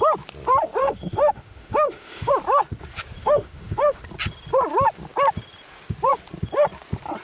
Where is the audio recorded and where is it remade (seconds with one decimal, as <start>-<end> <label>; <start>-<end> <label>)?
0.0-0.8 recorded; 0.8-2.3 remade; 2.3-3.2 recorded; 3.2-4.0 remade; 4.0-7.2 recorded